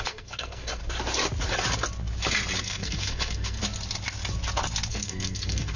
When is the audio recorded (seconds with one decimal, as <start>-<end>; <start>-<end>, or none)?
0.8-2.6; 3.6-4.9